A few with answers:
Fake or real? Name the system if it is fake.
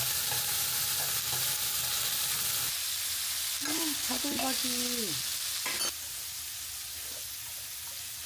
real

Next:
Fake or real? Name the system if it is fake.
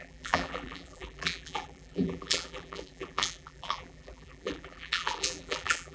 fake, vocoder, BigVGAN v2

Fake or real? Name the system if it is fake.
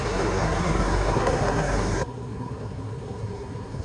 fake, codec, SNAC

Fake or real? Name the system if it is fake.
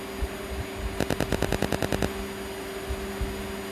real